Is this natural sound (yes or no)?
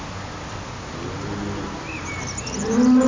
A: yes